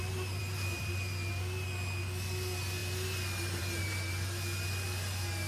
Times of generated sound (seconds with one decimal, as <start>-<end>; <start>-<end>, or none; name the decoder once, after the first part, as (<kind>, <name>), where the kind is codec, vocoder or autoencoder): 0.4-1.3 (vocoder, BigVGAN v2)